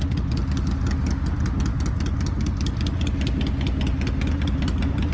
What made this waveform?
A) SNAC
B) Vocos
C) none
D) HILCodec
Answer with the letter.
C